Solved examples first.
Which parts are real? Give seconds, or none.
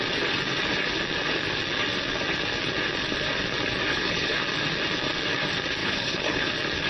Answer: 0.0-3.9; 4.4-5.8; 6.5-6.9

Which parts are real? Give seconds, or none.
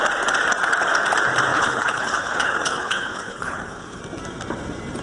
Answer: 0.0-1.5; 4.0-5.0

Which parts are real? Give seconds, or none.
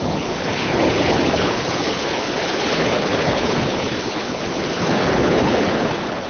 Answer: none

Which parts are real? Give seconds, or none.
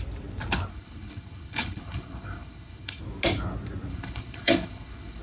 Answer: 0.0-0.7; 3.0-3.9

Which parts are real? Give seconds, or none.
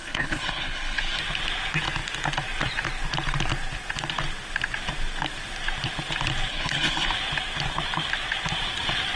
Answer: 1.2-6.5; 7.1-9.2